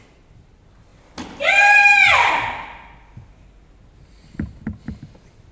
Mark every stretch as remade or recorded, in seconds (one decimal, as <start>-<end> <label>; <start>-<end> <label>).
0.0-5.5 recorded